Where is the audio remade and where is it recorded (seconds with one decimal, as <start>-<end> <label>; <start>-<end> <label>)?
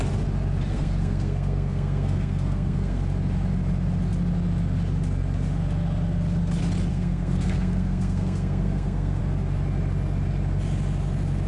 0.0-0.7 recorded; 0.7-3.0 remade; 3.0-6.9 recorded; 6.9-9.2 remade; 9.2-11.5 recorded